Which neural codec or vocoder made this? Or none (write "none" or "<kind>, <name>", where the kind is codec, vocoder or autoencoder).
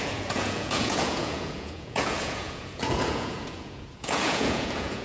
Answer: vocoder, Vocos